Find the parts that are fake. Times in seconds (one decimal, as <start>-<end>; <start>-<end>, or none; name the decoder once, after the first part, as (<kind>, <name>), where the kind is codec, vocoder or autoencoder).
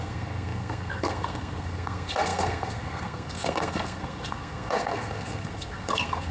0.0-6.3 (codec, SNAC)